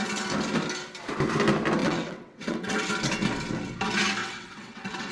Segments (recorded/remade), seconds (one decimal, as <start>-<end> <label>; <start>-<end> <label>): 0.0-1.8 recorded; 1.8-2.9 remade; 2.9-4.2 recorded; 4.2-5.1 remade